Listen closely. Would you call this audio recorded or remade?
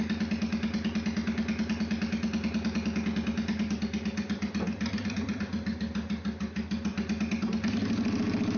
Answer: recorded